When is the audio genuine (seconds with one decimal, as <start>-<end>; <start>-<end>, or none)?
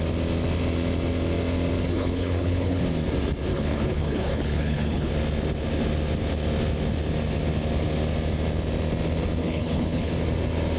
0.0-1.8; 2.8-3.5; 5.1-9.4; 10.1-10.8